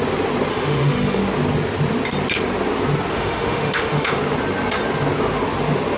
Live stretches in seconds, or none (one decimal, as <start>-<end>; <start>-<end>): 0.0-0.5; 1.2-3.1; 4.2-6.0